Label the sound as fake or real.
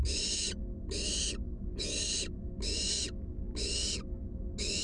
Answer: real